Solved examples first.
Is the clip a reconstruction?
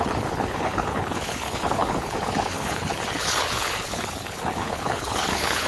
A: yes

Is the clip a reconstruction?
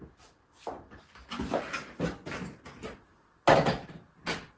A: no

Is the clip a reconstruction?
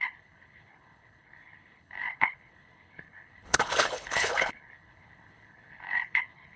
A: yes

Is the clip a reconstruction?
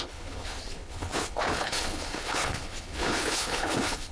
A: yes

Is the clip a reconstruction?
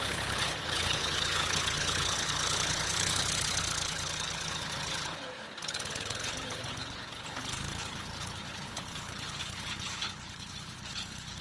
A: yes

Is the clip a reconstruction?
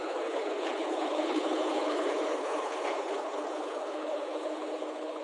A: yes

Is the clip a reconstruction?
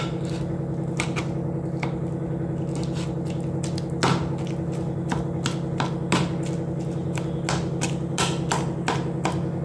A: no